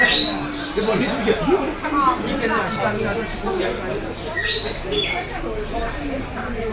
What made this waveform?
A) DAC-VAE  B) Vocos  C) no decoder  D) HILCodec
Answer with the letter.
C